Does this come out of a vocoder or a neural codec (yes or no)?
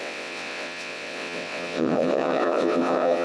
yes